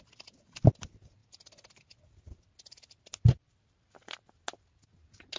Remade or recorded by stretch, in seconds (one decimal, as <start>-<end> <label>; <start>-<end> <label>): 0.0-5.4 recorded